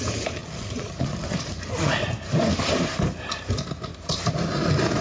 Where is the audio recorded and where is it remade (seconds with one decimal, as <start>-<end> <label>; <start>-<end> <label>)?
0.0-0.4 recorded; 0.4-1.7 remade; 1.7-5.0 recorded